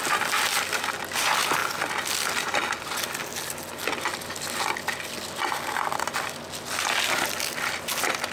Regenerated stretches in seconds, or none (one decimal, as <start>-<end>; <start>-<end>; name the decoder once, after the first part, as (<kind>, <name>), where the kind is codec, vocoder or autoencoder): none